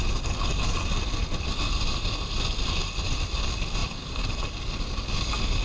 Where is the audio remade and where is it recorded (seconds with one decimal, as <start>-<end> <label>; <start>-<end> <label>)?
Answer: 0.0-5.6 recorded